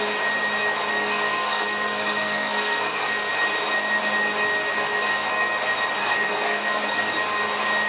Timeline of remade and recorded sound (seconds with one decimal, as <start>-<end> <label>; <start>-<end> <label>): 0.0-0.9 recorded; 0.9-3.3 remade; 3.3-4.7 recorded; 4.7-5.6 remade; 5.6-6.0 recorded; 6.0-7.1 remade; 7.1-7.9 recorded